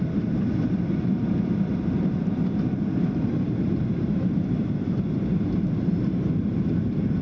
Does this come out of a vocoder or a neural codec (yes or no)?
yes